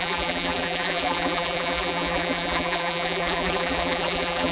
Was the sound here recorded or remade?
remade